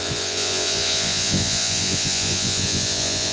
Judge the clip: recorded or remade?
remade